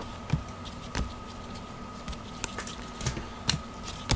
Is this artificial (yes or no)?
no